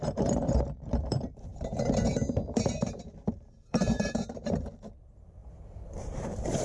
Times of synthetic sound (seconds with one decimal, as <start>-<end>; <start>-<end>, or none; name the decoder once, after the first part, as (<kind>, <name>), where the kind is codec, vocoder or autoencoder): 0.0-6.6 (vocoder, BigVGAN v2)